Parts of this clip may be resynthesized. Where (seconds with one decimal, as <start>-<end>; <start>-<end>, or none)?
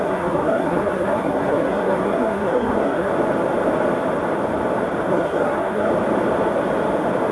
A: 0.0-3.1; 5.1-5.9